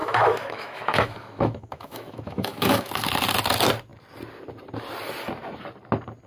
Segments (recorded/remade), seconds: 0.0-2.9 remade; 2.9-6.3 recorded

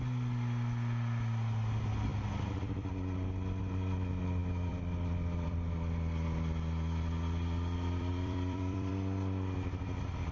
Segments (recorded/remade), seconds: 0.0-4.4 recorded; 4.4-8.9 remade; 8.9-10.3 recorded

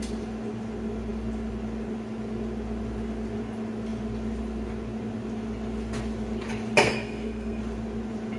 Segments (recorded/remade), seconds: 0.0-6.8 recorded; 6.8-7.6 remade; 7.6-8.4 recorded